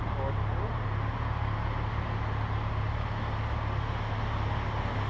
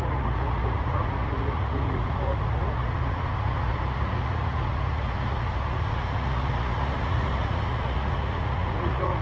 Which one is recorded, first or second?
first